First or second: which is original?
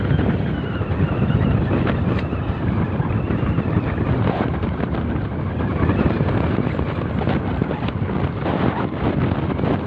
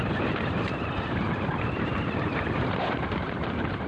first